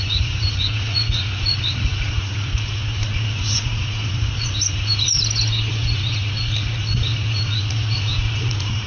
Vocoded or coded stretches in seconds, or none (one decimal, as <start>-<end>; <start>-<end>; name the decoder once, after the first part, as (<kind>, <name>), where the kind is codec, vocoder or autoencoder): 0.0-5.2 (vocoder, Vocos); 5.7-8.9